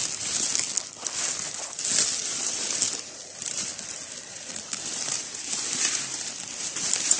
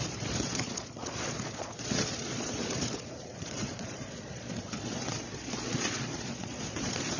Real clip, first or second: first